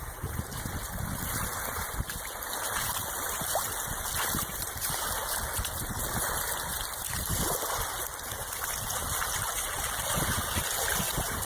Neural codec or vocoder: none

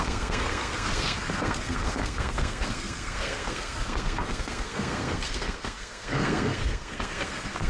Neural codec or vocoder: codec, SNAC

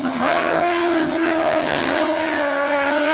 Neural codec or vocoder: vocoder, HiFi-GAN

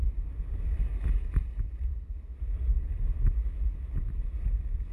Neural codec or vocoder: none